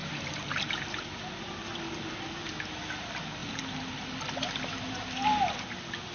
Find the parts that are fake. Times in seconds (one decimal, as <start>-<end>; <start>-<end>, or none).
0.0-1.7; 2.9-6.1